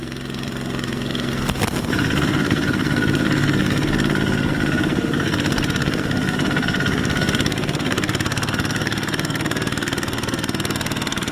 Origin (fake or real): fake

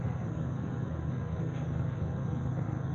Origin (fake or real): fake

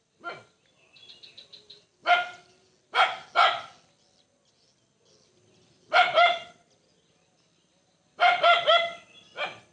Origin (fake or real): real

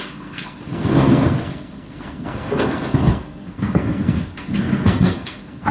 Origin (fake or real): fake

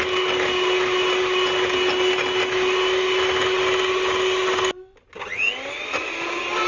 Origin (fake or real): real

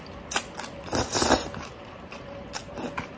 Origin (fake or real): real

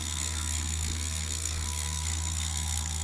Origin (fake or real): fake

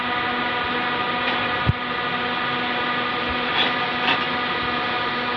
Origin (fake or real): real